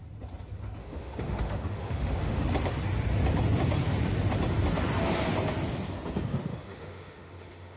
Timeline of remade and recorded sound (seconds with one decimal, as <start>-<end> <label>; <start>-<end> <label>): 0.0-0.8 recorded; 0.8-2.4 remade; 2.4-6.5 recorded; 6.5-7.8 remade